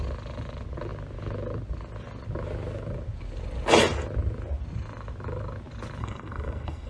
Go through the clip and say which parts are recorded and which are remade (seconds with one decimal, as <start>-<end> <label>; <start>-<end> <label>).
0.0-6.0 recorded; 6.0-6.9 remade